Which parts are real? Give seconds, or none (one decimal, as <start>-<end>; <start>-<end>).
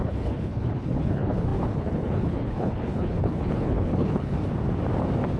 4.4-5.4